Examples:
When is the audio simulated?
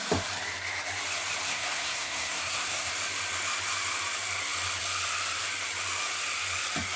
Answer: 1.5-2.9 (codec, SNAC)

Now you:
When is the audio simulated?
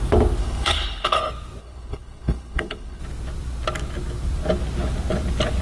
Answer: 0.4-1.2 (codec, HILCodec); 1.6-3.0